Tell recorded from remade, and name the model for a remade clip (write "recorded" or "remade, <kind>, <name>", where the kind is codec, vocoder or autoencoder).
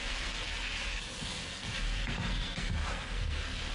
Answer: remade, codec, SNAC